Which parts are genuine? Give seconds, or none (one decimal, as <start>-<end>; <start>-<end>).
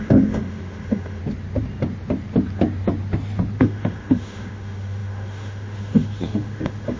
1.2-3.6